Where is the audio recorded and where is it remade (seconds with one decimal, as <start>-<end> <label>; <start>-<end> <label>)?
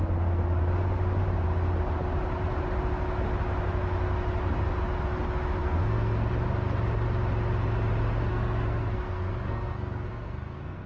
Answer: 0.0-5.6 recorded; 5.6-6.3 remade; 6.3-8.3 recorded; 8.3-10.9 remade